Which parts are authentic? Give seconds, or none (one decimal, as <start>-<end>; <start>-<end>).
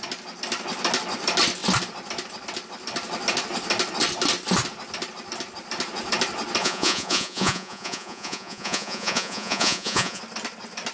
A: 0.0-6.6; 10.2-10.9